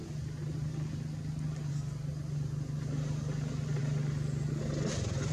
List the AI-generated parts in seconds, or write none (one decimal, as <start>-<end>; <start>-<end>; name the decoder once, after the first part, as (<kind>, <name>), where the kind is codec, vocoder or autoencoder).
none

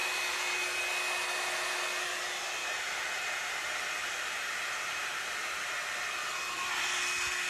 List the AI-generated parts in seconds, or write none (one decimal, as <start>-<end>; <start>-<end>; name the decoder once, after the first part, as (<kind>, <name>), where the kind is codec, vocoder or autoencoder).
2.6-6.0 (vocoder, BigVGAN v2)

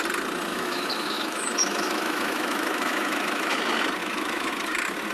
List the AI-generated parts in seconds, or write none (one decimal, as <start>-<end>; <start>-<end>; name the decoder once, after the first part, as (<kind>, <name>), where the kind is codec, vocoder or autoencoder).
0.5-3.6 (autoencoder, DAC-VAE); 4.0-4.5

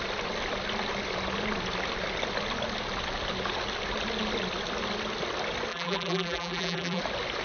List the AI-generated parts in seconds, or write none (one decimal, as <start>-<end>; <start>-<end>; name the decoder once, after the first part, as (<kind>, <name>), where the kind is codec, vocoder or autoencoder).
5.7-7.0 (vocoder, BigVGAN v2)

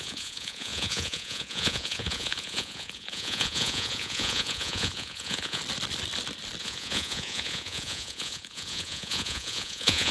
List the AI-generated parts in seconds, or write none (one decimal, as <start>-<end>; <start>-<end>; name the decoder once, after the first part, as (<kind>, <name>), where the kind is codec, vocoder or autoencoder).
0.0-5.6 (vocoder, Vocos); 6.6-10.1

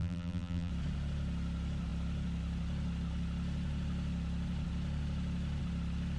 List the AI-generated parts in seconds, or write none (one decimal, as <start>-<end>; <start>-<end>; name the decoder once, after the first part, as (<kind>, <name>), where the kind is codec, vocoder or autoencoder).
0.0-0.7 (vocoder, BigVGAN v2)

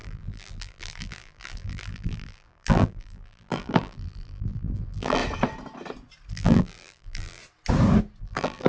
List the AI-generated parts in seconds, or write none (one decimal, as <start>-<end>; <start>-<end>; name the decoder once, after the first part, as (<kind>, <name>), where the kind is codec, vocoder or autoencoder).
0.0-5.2 (vocoder, BigVGAN v2); 6.3-7.4; 8.2-8.7